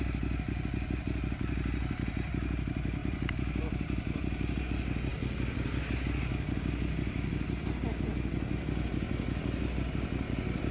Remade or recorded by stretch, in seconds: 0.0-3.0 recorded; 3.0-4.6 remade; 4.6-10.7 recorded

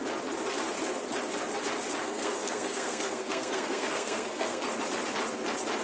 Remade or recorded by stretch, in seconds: 0.0-2.0 recorded; 2.0-4.7 remade; 4.7-5.8 recorded

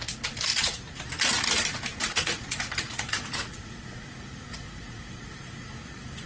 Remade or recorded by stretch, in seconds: 0.0-0.5 recorded; 0.5-1.0 remade; 1.0-1.9 recorded; 1.9-5.7 remade; 5.7-6.3 recorded

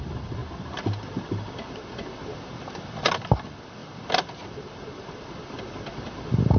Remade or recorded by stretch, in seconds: 0.0-6.6 recorded

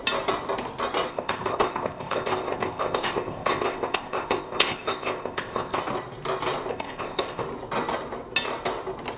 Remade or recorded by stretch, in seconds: 0.0-1.1 recorded; 1.1-5.8 remade; 5.8-6.7 recorded; 6.7-7.4 remade; 7.4-9.2 recorded